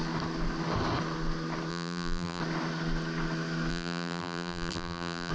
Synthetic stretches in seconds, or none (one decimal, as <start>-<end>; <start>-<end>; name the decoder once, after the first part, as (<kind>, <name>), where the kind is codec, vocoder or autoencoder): 1.7-2.4 (vocoder, BigVGAN v2); 3.7-5.3